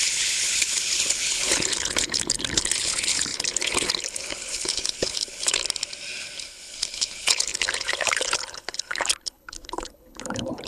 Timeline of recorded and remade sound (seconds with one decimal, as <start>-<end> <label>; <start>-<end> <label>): 0.0-5.6 remade; 5.6-6.4 recorded; 6.4-10.7 remade